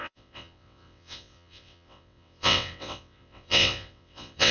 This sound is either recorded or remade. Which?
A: remade